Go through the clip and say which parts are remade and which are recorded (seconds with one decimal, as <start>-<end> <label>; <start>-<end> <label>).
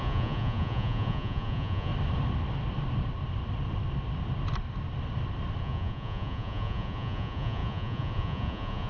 0.0-1.9 remade; 1.9-5.6 recorded; 5.6-8.9 remade